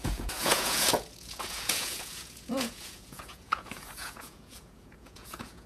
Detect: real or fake fake